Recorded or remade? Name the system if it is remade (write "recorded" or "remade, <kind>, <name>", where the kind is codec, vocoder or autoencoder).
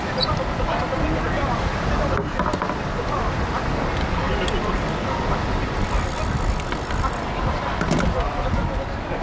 recorded